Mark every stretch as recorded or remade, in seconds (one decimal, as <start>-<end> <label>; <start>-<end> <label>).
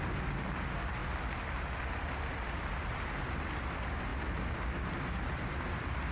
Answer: 0.0-6.1 recorded